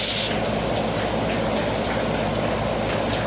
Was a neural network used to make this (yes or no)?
no